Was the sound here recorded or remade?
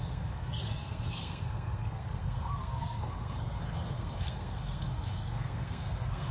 remade